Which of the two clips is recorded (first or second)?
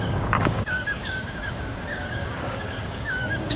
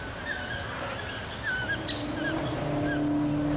second